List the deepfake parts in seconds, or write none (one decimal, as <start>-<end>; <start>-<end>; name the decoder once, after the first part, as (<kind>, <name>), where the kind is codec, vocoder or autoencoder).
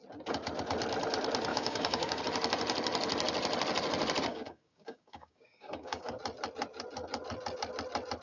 1.5-2.2 (codec, DAC); 4.3-6.1